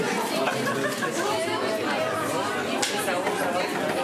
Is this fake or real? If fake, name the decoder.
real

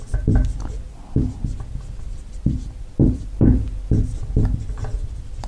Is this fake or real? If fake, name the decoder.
real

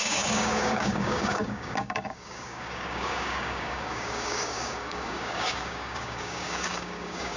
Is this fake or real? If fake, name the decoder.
fake, codec, DAC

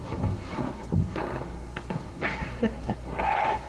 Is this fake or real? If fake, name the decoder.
fake, codec, SNAC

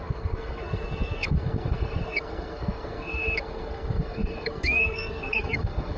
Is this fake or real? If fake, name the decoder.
fake, codec, SNAC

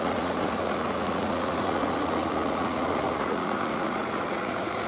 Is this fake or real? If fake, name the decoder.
fake, vocoder, Vocos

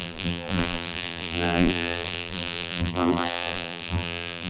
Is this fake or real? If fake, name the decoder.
fake, vocoder, BigVGAN v2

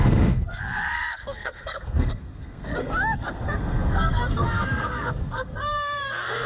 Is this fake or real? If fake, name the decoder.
fake, codec, SNAC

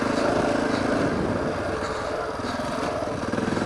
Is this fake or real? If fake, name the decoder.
real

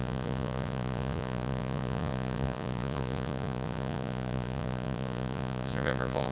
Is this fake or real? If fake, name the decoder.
fake, vocoder, Vocos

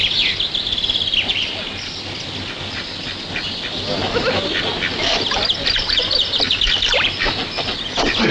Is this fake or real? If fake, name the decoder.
real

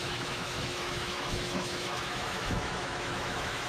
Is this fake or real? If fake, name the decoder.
fake, autoencoder, DAC-VAE